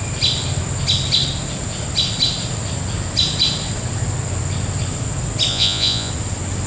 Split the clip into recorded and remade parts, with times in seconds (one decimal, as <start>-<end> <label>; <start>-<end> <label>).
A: 0.0-5.5 recorded; 5.5-6.1 remade; 6.1-6.7 recorded